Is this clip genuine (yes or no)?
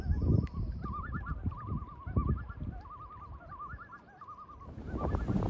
yes